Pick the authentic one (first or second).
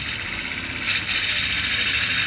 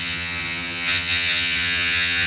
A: first